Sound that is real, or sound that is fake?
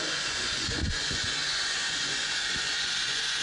fake